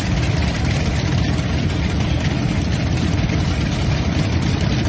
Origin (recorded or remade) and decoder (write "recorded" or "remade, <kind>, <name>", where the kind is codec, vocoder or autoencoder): remade, vocoder, BigVGAN v2